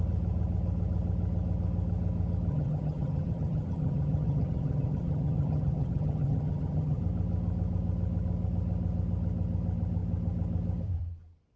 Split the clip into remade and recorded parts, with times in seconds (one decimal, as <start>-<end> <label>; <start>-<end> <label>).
0.0-2.5 recorded; 2.5-7.0 remade; 7.0-11.6 recorded